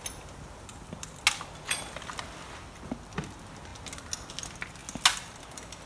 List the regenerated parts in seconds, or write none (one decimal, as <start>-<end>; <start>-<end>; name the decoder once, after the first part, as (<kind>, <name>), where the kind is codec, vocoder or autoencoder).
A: none